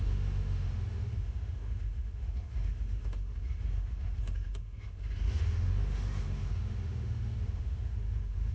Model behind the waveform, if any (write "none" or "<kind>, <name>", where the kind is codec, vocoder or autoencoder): autoencoder, DAC-VAE